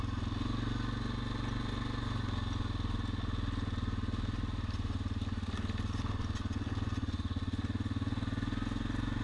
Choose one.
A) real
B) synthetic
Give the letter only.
A